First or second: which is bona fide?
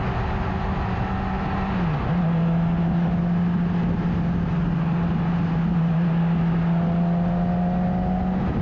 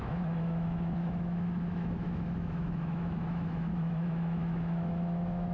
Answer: first